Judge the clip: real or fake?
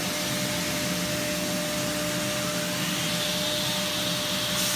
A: real